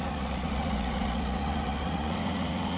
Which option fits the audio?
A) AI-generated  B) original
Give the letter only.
A